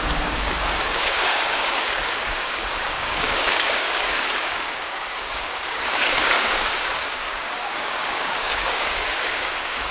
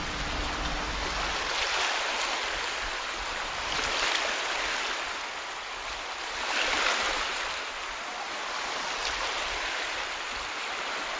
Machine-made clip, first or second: first